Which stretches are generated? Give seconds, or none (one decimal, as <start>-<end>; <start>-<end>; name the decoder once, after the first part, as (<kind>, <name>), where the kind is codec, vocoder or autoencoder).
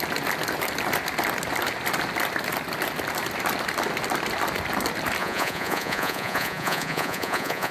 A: 5.2-7.7 (vocoder, Vocos)